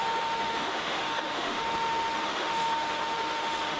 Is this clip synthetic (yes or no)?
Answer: yes